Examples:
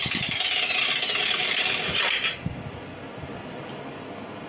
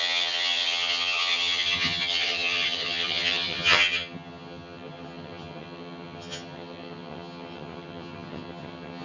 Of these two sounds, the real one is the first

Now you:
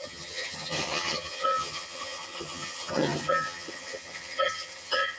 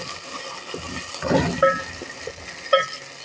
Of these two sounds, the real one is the second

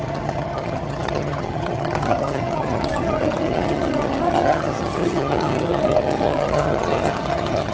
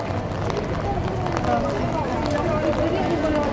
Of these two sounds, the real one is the second